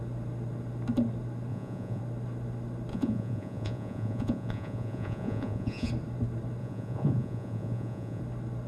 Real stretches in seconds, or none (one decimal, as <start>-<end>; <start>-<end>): 0.0-1.5; 2.0-2.9; 5.9-6.6; 8.2-8.7